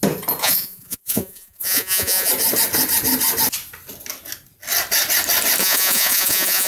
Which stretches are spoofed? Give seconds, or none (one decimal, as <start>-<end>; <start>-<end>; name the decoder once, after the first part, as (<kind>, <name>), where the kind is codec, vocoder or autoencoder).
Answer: 0.4-2.3 (vocoder, Vocos); 5.6-6.7